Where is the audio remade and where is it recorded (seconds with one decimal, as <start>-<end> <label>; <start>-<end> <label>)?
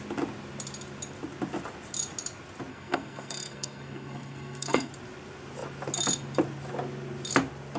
0.0-2.7 recorded; 2.7-4.9 remade; 4.9-7.8 recorded